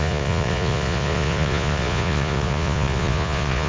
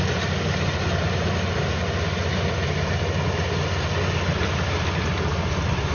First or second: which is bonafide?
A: second